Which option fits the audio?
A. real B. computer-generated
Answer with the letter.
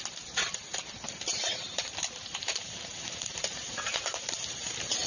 B